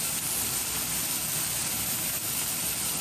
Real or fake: real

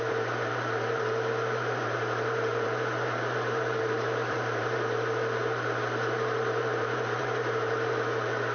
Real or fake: fake